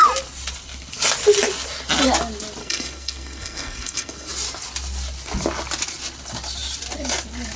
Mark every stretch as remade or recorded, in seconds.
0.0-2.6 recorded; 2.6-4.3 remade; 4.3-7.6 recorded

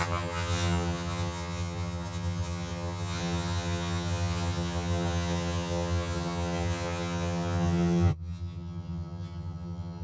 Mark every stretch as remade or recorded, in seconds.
0.0-10.0 remade